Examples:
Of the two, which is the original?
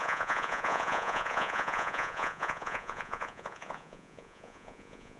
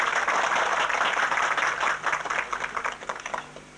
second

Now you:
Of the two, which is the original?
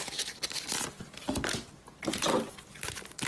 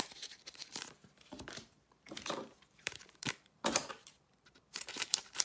first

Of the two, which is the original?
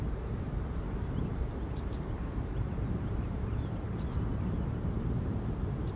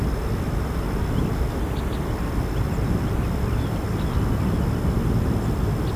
second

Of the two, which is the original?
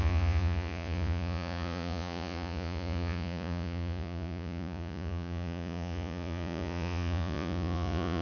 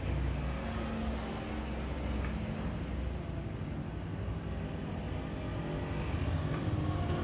second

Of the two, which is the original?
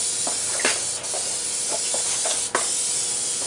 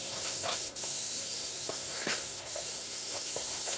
first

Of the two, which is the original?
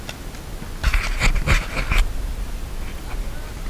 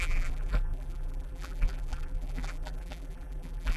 first